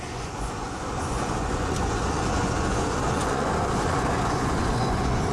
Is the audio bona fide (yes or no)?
no